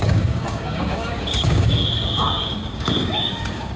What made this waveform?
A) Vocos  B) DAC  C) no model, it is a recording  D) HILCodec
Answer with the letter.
B